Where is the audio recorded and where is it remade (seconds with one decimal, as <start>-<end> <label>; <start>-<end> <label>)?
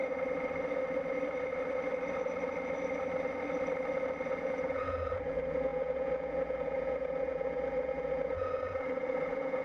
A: 0.0-4.4 recorded; 4.4-9.6 remade